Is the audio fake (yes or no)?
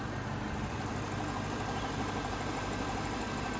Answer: no